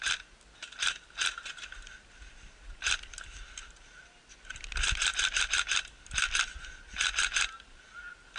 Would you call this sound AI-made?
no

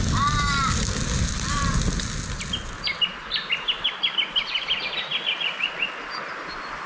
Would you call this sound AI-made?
no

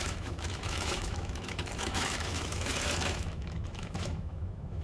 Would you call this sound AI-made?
yes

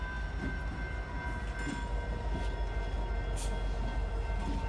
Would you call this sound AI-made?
no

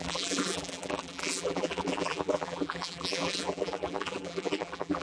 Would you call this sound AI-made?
yes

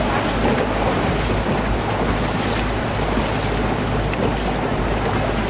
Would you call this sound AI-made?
no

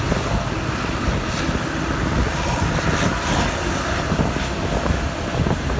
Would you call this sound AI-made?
no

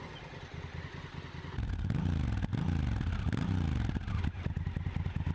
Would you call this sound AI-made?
no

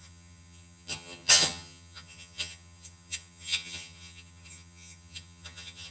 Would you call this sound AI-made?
yes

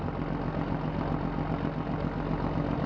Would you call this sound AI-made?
no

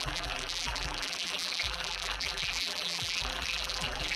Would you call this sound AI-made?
yes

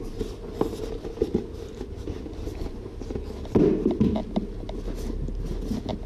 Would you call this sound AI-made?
no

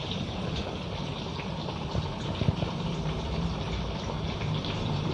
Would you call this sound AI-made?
yes